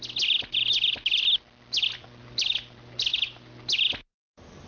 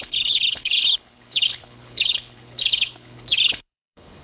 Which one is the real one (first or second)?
first